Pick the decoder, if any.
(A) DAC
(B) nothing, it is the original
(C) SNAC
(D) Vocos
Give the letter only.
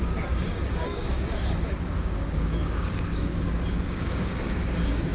A